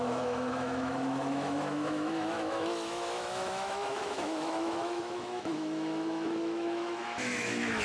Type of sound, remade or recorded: remade